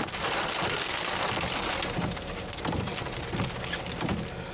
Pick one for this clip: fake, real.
real